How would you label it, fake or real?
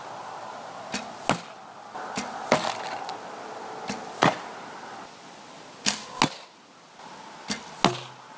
real